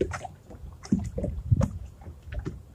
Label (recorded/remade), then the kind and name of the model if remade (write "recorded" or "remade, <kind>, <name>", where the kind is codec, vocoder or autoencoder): remade, vocoder, BigVGAN v2